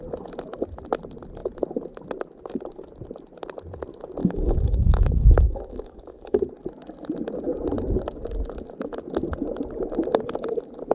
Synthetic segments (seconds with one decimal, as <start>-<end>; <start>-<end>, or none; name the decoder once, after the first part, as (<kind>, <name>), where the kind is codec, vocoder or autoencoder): 4.2-6.4 (codec, DAC)